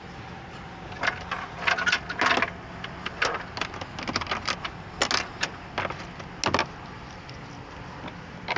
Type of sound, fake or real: real